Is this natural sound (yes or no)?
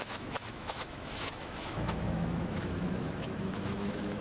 no